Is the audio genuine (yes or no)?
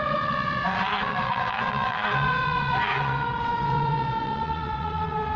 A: no